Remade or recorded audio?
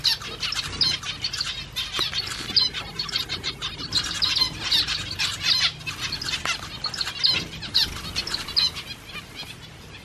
recorded